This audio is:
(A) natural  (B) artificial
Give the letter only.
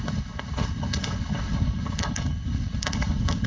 B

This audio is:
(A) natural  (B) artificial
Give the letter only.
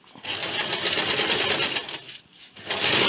A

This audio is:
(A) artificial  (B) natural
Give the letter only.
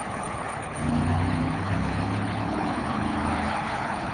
A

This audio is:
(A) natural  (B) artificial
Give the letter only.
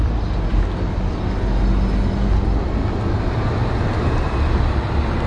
A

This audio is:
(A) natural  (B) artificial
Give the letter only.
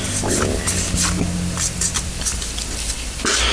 A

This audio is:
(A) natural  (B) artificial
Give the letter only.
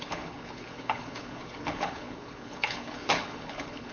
B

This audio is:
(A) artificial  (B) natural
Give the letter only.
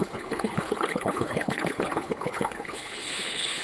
A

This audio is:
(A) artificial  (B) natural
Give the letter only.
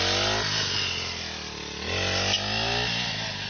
B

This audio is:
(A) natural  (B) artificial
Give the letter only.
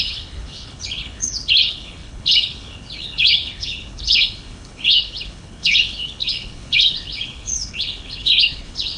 B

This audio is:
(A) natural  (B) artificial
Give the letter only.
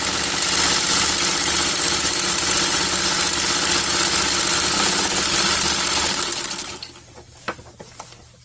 A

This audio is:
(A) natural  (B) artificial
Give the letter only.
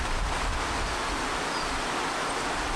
A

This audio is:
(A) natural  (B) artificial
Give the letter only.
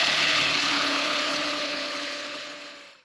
B